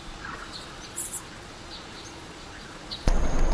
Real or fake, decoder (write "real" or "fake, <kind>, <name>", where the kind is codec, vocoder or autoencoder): fake, vocoder, Vocos